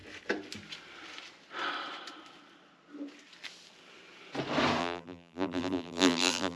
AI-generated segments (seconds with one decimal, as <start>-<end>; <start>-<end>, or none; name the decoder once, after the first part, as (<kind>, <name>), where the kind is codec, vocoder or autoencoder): 4.8-6.6 (vocoder, BigVGAN v2)